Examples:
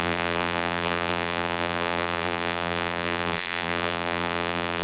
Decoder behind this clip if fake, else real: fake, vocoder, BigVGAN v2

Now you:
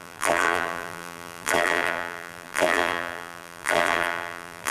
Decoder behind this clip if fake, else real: fake, vocoder, BigVGAN v2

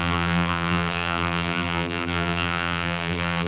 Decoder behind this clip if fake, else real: fake, vocoder, BigVGAN v2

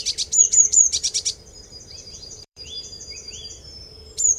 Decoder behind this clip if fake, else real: fake, vocoder, BigVGAN v2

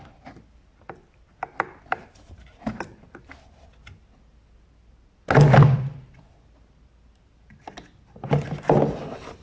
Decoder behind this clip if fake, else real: real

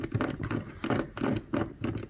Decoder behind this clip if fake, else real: real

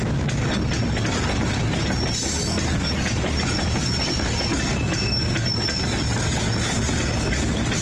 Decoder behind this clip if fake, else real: real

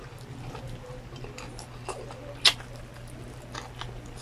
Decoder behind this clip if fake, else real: real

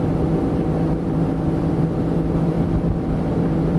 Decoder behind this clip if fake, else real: fake, vocoder, BigVGAN v2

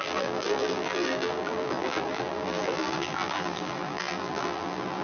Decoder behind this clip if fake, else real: fake, vocoder, BigVGAN v2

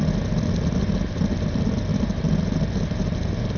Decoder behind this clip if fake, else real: real